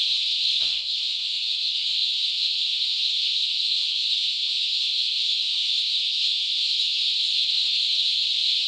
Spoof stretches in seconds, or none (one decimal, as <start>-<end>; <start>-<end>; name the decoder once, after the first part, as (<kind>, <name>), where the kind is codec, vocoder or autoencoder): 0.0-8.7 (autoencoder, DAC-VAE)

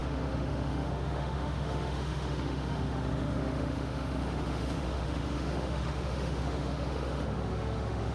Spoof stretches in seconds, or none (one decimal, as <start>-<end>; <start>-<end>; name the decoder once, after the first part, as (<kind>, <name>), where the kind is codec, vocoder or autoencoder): 0.0-8.1 (autoencoder, DAC-VAE)

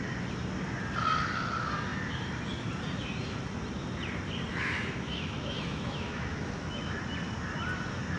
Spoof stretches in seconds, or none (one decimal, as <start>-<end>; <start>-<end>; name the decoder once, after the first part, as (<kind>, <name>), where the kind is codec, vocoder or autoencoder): 4.5-7.0 (autoencoder, DAC-VAE)

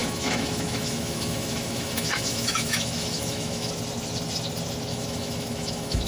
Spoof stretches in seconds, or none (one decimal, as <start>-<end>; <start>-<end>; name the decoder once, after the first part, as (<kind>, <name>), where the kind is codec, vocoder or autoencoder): 0.0-3.7 (autoencoder, DAC-VAE); 4.9-6.1

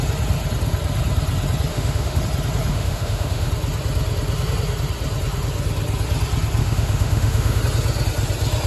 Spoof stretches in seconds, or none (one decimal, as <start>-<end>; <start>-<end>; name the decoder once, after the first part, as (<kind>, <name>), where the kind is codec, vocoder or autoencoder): 1.7-2.2 (autoencoder, DAC-VAE); 2.7-3.5; 6.6-7.6